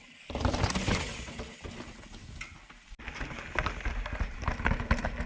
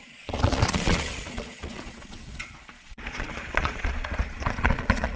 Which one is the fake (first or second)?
second